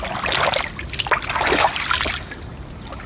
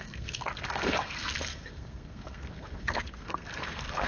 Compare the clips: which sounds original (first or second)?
first